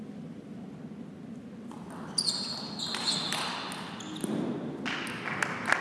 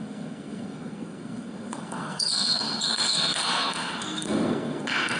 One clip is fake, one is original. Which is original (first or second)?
first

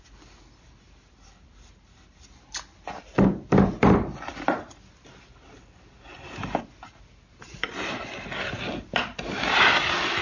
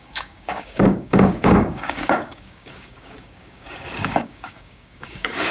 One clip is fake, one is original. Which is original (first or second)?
first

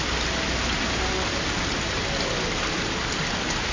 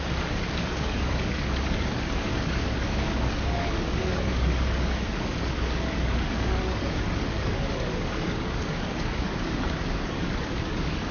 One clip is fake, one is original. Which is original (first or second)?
first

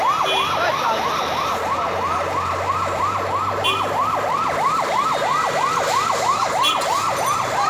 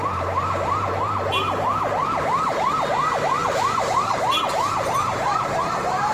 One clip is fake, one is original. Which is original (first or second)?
first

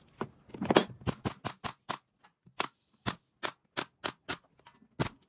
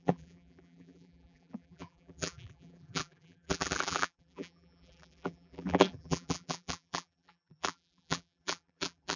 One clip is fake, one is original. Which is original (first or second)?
first